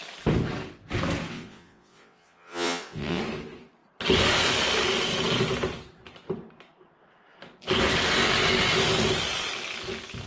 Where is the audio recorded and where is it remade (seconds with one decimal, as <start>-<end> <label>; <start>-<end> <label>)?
0.0-1.3 recorded; 1.3-3.2 remade; 3.2-10.3 recorded

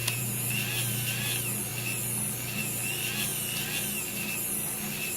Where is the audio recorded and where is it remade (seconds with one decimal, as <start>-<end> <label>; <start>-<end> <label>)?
0.0-0.5 remade; 0.5-5.2 recorded

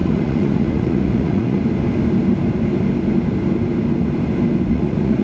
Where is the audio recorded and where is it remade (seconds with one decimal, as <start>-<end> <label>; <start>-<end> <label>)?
0.0-1.6 remade; 1.6-4.7 recorded; 4.7-5.2 remade